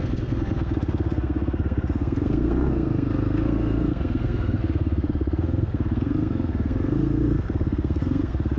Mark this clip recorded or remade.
remade